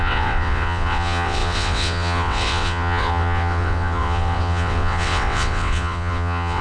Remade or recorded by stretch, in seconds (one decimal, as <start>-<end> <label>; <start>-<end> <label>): 0.0-6.6 remade